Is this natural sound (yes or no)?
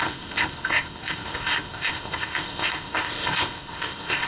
no